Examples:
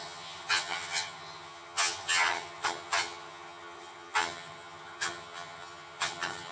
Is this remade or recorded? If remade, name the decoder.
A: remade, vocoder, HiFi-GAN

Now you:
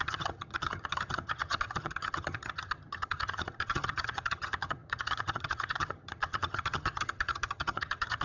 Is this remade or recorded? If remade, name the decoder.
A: remade, vocoder, HiFi-GAN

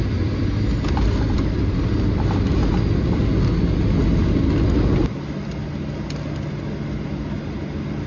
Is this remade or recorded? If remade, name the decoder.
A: recorded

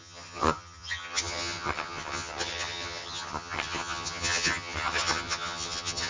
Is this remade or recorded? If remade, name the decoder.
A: remade, vocoder, HiFi-GAN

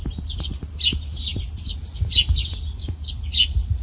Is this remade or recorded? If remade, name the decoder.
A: recorded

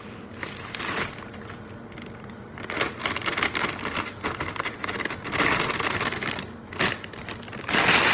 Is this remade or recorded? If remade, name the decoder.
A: recorded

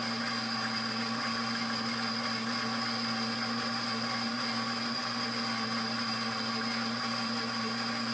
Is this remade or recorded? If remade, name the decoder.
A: recorded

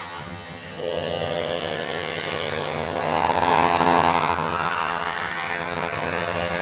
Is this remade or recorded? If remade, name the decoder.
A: remade, vocoder, HiFi-GAN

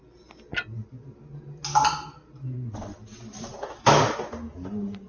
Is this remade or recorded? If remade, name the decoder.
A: recorded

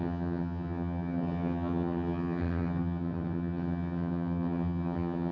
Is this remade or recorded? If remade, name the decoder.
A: remade, vocoder, HiFi-GAN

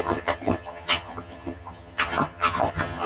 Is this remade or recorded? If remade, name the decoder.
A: remade, vocoder, HiFi-GAN